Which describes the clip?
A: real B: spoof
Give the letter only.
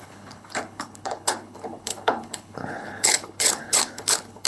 B